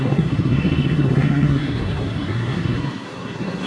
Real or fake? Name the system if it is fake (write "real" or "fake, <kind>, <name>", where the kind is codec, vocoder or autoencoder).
fake, codec, SNAC